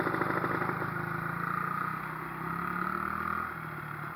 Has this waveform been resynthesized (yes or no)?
no